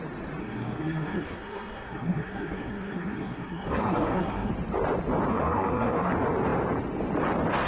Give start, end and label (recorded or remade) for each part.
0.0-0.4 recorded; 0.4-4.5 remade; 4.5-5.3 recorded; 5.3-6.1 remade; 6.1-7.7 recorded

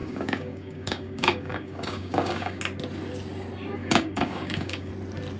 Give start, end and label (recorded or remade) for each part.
0.0-2.6 remade; 2.6-3.8 recorded; 3.8-4.9 remade; 4.9-5.4 recorded

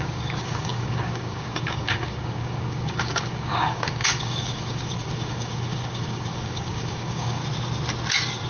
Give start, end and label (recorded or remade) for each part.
0.0-7.4 remade; 7.4-8.5 recorded

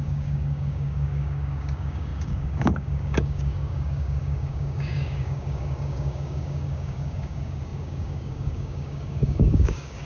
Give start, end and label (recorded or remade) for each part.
0.0-10.0 remade

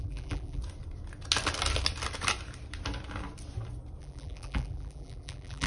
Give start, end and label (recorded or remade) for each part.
0.0-0.6 remade; 0.6-4.0 recorded; 4.0-5.7 remade

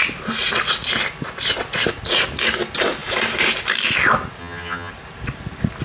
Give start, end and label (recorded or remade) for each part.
0.0-4.4 recorded; 4.4-4.9 remade; 4.9-5.8 recorded